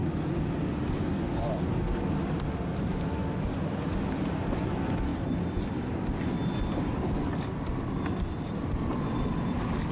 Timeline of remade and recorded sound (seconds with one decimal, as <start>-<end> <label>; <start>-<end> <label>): 0.0-9.9 recorded